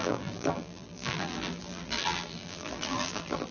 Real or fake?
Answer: fake